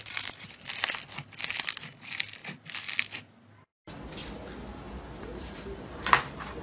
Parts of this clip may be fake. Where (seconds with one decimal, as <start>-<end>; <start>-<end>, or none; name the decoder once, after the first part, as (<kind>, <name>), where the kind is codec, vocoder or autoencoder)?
5.3-6.0 (vocoder, BigVGAN v2)